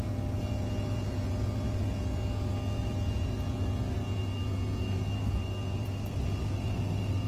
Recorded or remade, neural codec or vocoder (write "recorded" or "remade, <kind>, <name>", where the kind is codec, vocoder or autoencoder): recorded